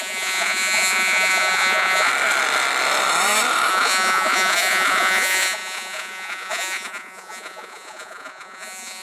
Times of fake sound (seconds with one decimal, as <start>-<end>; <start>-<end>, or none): 0.0-2.1; 3.7-9.0